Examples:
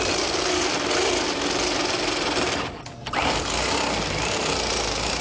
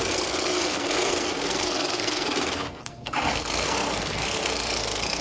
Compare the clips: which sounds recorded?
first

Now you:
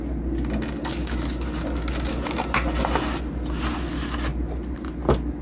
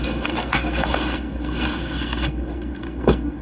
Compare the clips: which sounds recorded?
first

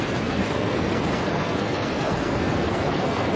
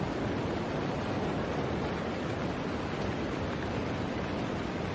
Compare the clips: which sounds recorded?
second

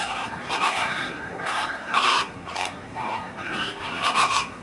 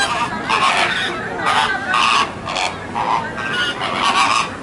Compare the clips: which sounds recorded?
second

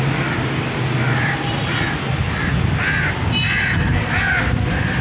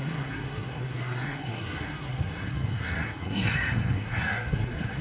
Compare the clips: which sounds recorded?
first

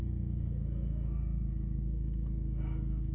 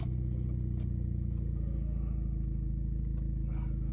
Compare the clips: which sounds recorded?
second